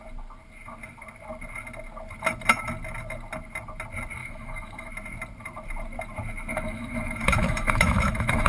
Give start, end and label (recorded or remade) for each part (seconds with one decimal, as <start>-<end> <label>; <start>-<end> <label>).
0.0-4.2 recorded; 4.2-4.9 remade; 4.9-6.5 recorded; 6.5-8.5 remade